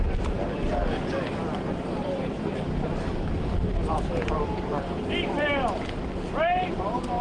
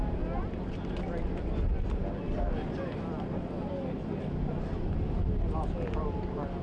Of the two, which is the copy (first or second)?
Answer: first